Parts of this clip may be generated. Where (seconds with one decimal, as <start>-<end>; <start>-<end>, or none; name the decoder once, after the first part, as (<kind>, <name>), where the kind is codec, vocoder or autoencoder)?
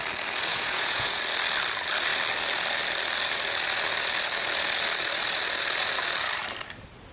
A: 0.5-1.2 (vocoder, Vocos)